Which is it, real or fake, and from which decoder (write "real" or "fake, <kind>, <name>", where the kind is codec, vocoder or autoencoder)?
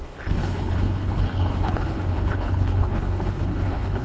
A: fake, codec, HILCodec